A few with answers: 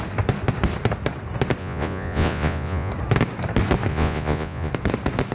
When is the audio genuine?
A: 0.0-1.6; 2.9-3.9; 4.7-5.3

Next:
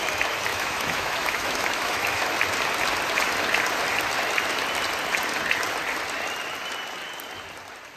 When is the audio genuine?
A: 0.0-0.5; 2.2-8.0

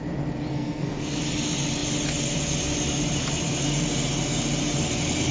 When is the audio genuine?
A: 0.0-0.5; 1.2-5.3

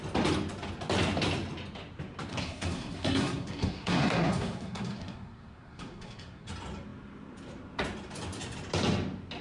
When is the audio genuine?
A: 0.0-2.3; 6.5-9.4

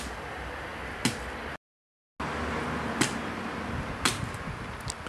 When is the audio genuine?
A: 0.0-5.1

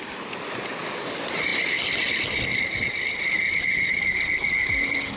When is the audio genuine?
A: 0.0-5.2